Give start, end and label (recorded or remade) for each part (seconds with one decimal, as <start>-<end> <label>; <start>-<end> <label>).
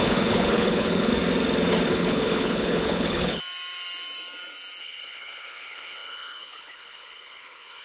0.0-1.1 remade; 1.1-1.9 recorded; 1.9-3.4 remade; 3.4-4.8 recorded; 4.8-7.8 remade